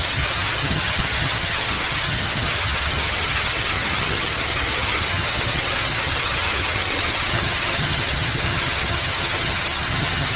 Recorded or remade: remade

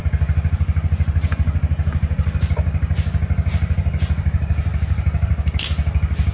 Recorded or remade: recorded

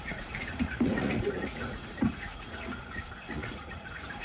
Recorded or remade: remade